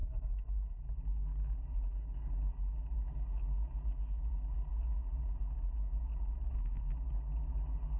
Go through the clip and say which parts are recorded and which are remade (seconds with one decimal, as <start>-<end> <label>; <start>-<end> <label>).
0.0-0.8 remade; 0.8-8.0 recorded